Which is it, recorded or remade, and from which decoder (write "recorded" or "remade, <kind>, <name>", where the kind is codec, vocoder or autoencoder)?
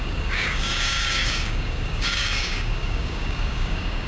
remade, codec, DAC